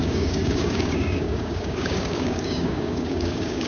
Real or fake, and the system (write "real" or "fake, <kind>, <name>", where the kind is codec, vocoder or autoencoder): fake, codec, DAC